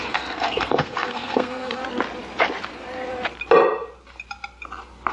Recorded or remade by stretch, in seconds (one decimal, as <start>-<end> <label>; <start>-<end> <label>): 0.0-1.8 remade; 1.8-5.1 recorded